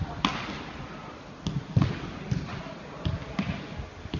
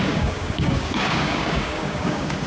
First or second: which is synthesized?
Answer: second